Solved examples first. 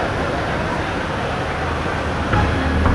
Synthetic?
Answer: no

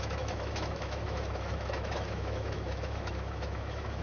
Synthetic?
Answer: yes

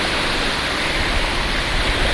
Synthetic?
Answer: no